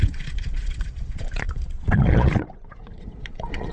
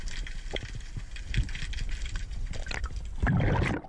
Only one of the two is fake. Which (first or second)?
first